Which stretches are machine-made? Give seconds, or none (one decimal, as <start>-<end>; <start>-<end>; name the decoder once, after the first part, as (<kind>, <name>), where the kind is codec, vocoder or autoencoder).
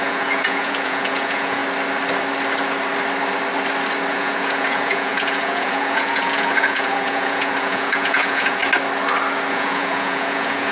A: 0.0-1.6 (vocoder, Vocos); 4.1-8.6; 9.5-10.7